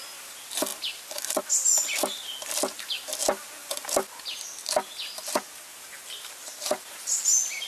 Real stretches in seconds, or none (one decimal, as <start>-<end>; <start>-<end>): 0.0-5.7; 7.2-7.7